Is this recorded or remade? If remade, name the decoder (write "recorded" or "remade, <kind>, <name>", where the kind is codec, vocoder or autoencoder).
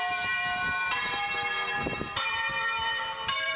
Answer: remade, vocoder, BigVGAN v2